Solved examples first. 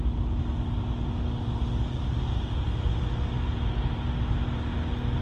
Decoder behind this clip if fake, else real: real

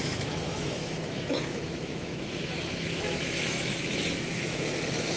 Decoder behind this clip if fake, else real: fake, autoencoder, DAC-VAE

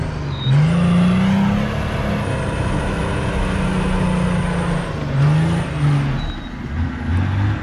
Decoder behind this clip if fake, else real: real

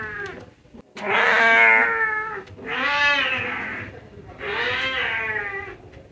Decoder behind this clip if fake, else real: real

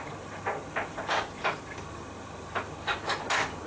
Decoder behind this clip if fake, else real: real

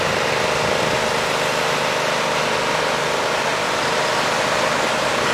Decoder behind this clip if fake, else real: real